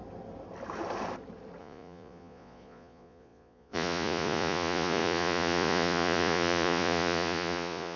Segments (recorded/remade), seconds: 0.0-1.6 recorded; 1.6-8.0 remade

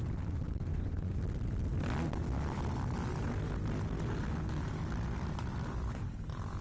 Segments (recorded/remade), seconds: 0.0-0.7 recorded; 0.7-1.2 remade; 1.2-6.6 recorded